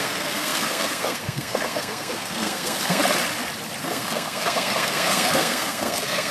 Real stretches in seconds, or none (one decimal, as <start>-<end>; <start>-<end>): 3.0-3.8